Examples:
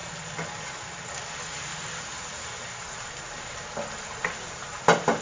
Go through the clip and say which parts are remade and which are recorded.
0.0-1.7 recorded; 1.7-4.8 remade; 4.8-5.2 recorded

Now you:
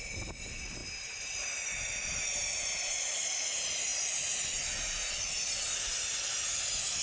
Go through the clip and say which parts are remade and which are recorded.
0.0-7.0 recorded

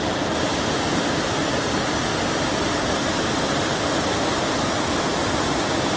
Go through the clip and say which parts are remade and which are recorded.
0.0-6.0 recorded

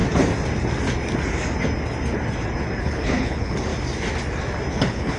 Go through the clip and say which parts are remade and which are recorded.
0.0-2.8 recorded; 2.8-3.7 remade; 3.7-4.7 recorded; 4.7-5.2 remade